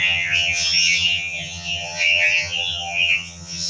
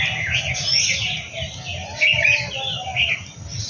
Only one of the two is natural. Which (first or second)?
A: second